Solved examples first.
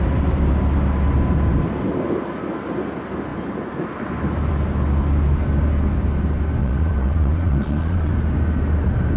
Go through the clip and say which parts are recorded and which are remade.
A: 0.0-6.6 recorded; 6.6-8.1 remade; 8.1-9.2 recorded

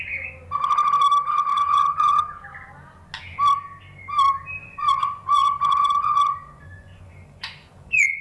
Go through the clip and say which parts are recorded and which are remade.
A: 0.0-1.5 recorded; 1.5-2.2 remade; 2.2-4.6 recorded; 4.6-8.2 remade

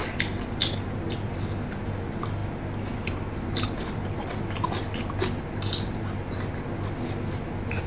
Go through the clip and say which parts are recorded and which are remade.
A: 0.0-7.9 recorded